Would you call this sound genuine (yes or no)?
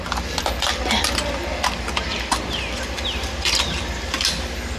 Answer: yes